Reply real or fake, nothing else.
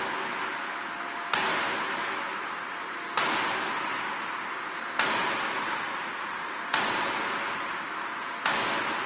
real